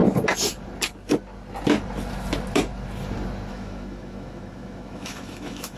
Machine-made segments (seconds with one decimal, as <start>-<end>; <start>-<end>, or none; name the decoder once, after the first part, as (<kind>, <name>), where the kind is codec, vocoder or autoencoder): 3.5-5.8 (autoencoder, DAC-VAE)